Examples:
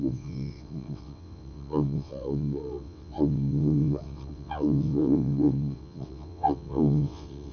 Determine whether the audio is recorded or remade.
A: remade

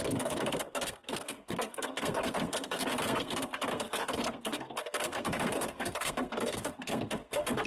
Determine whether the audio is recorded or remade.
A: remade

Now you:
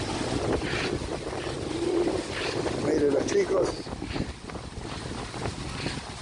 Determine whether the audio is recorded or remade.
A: recorded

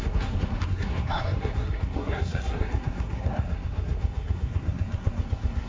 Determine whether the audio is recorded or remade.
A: remade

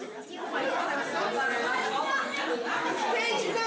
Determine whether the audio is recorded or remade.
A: recorded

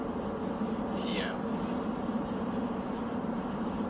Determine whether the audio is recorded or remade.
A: remade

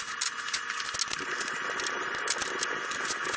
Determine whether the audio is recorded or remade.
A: recorded